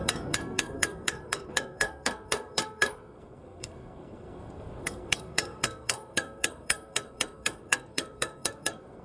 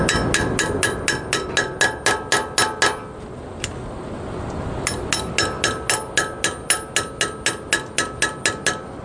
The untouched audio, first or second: second